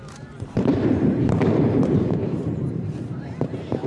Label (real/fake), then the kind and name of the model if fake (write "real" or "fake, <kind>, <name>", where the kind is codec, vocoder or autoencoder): fake, vocoder, BigVGAN v2